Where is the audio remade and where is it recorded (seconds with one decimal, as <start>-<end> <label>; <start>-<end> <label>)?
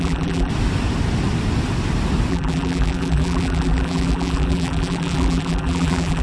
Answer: 0.0-0.5 remade; 0.5-2.3 recorded; 2.3-6.2 remade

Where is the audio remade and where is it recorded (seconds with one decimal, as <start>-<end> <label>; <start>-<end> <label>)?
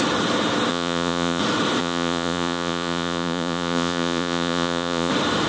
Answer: 0.0-0.7 recorded; 0.7-1.4 remade; 1.4-1.8 recorded; 1.8-5.1 remade; 5.1-5.5 recorded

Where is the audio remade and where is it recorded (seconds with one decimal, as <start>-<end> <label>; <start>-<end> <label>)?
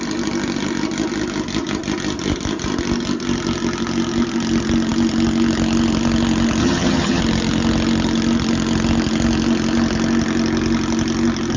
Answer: 0.0-6.6 recorded; 6.6-7.2 remade; 7.2-11.6 recorded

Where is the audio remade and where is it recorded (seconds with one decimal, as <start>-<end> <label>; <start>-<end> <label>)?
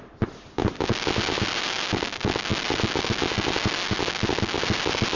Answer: 0.0-5.2 recorded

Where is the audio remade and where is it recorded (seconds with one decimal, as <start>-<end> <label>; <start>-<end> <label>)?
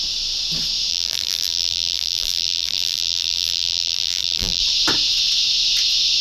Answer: 0.0-0.9 recorded; 0.9-4.6 remade; 4.6-6.2 recorded